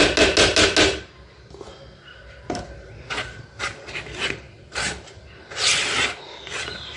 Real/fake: real